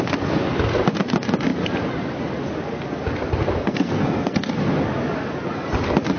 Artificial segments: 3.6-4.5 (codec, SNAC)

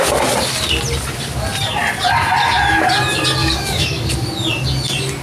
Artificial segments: 3.4-4.1 (codec, DAC)

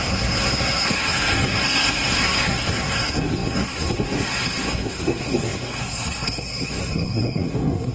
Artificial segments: 0.0-7.9 (codec, SNAC)

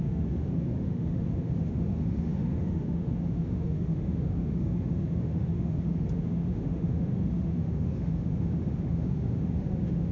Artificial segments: 0.0-10.1 (autoencoder, DAC-VAE)

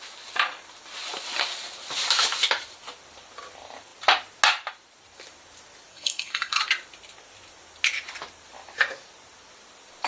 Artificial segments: 5.9-6.6 (codec, SNAC)

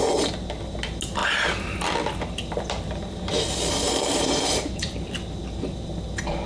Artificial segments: 1.2-5.1 (vocoder, BigVGAN v2)